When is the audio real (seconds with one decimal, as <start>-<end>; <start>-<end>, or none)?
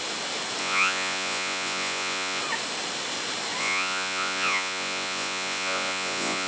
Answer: 0.0-0.6; 2.4-3.6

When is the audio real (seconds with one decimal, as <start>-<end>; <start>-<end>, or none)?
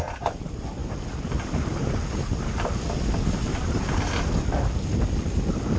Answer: 0.0-5.8